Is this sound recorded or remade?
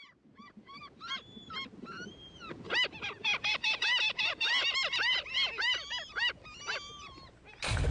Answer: recorded